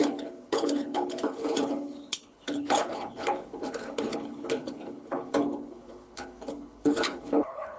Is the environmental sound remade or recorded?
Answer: remade